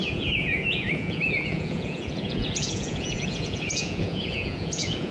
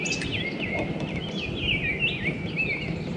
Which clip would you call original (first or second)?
second